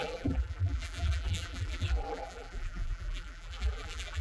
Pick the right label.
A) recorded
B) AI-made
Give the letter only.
B